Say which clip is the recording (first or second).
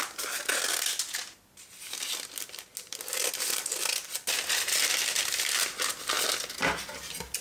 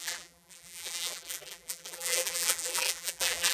first